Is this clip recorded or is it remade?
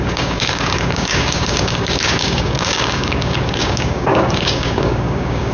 remade